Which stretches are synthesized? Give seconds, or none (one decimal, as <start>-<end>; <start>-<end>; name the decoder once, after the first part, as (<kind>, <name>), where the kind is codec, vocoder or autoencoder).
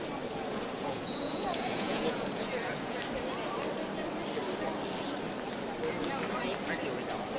0.5-3.0 (vocoder, Vocos)